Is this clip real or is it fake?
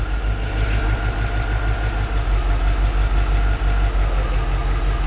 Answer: real